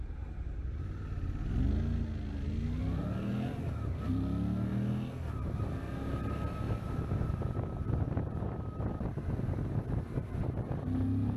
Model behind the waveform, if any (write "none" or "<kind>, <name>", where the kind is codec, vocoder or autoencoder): none